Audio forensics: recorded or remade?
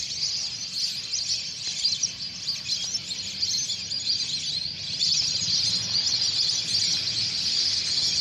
recorded